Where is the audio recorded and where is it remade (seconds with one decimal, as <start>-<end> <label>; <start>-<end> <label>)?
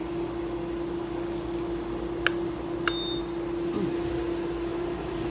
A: 0.0-4.7 recorded; 4.7-5.3 remade